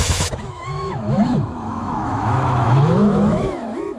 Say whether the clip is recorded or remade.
remade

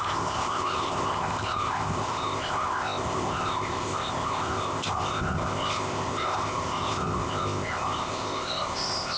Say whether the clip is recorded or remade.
remade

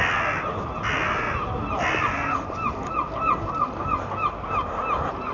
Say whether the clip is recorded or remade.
recorded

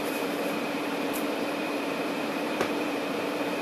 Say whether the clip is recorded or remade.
remade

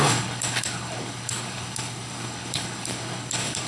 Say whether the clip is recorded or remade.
remade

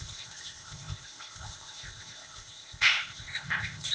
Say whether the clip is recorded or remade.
remade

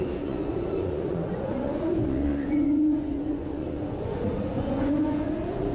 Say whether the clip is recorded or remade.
remade